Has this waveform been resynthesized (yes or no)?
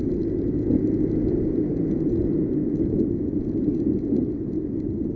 no